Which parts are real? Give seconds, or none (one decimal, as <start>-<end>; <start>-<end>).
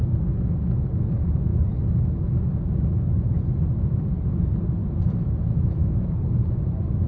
0.0-1.1; 1.5-3.8; 4.8-5.5